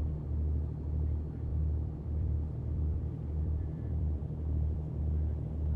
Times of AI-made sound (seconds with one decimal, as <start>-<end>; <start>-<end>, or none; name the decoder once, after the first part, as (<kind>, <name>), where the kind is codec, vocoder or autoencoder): 1.5-5.0 (vocoder, BigVGAN v2)